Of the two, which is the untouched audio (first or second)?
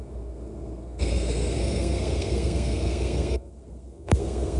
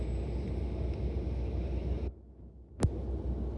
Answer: second